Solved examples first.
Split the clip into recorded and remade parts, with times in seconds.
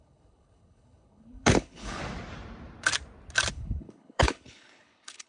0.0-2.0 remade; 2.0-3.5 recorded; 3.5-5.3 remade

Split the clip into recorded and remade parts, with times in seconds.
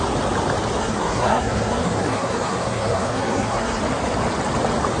0.0-0.8 recorded; 0.8-3.8 remade; 3.8-5.0 recorded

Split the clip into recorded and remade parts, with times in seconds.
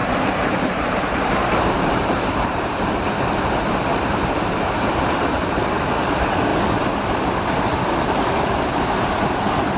0.0-3.2 remade; 3.2-3.9 recorded; 3.9-5.7 remade; 5.7-9.8 recorded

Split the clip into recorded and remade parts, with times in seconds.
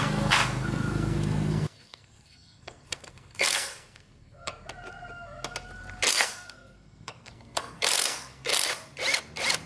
0.0-4.5 remade; 4.5-6.1 recorded; 6.1-8.5 remade; 8.5-9.7 recorded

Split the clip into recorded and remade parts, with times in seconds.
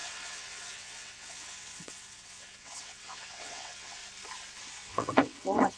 0.0-4.0 remade; 4.0-4.6 recorded; 4.6-5.8 remade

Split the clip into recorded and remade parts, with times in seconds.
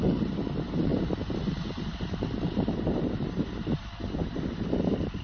0.0-5.2 remade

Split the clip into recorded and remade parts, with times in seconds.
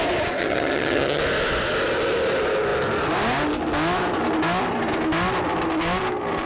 0.0-0.4 recorded; 0.4-1.2 remade; 1.2-6.5 recorded